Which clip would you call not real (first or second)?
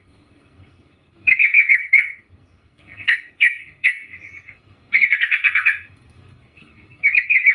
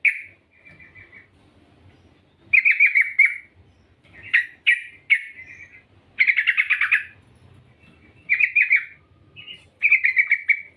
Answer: first